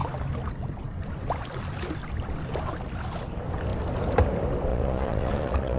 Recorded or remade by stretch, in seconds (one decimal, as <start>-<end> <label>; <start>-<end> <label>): 0.0-4.7 recorded; 4.7-5.8 remade